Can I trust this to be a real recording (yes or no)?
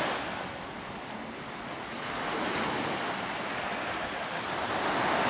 yes